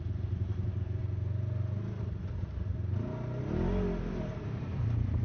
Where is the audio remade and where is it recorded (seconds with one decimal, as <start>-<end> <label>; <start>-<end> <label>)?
0.0-1.0 remade; 1.0-4.1 recorded; 4.1-5.2 remade